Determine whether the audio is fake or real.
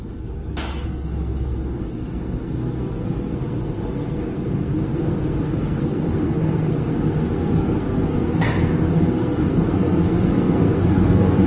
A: fake